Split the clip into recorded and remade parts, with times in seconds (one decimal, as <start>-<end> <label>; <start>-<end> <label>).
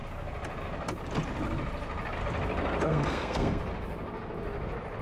0.0-2.9 recorded; 2.9-3.6 remade; 3.6-5.0 recorded